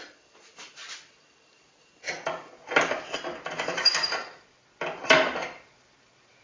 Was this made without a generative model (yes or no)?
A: no